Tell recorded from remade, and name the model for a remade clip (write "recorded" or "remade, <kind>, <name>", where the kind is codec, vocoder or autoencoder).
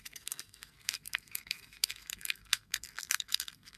remade, codec, SNAC